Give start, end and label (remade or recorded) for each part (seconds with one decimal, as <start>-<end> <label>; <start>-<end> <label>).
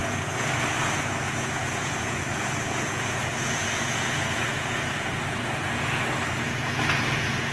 0.0-7.5 remade